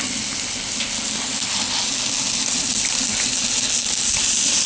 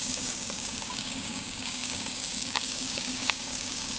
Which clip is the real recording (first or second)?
first